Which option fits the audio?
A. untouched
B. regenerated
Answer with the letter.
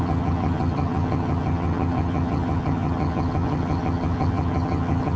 B